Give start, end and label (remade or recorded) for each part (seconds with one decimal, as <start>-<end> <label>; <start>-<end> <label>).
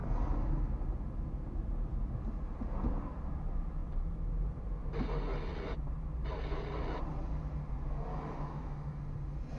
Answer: 0.0-8.1 recorded; 8.1-9.0 remade; 9.0-9.6 recorded